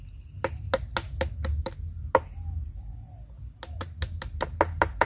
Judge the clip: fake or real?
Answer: real